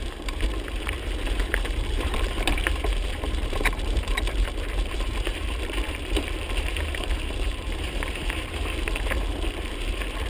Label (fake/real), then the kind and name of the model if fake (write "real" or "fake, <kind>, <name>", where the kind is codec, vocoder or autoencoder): fake, vocoder, BigVGAN v2